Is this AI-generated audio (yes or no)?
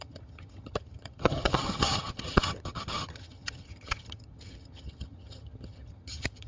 yes